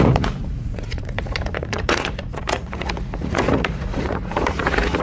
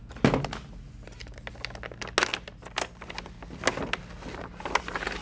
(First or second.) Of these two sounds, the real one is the second